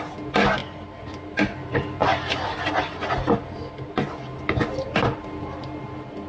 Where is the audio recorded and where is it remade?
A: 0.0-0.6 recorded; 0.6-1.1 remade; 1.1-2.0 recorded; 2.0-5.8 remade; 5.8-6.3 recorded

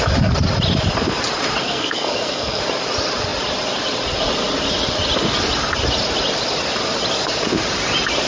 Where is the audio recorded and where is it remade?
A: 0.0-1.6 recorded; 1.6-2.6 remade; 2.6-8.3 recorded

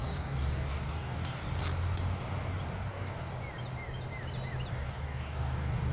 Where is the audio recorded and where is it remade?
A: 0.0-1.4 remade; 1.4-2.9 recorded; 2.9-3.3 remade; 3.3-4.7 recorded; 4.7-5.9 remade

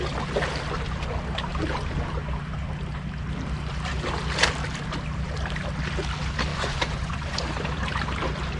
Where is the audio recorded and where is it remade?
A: 0.0-6.5 recorded; 6.5-7.4 remade; 7.4-8.6 recorded